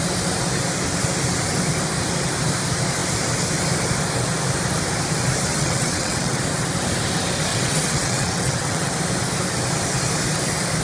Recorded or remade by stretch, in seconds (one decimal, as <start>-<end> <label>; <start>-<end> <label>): 0.0-5.5 recorded; 5.5-6.4 remade; 6.4-7.5 recorded; 7.5-8.9 remade; 8.9-10.8 recorded